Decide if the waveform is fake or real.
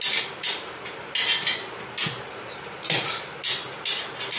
real